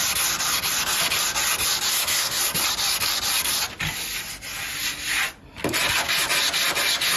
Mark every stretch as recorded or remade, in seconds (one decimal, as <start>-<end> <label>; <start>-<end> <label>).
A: 0.0-1.9 recorded; 1.9-2.4 remade; 2.4-7.2 recorded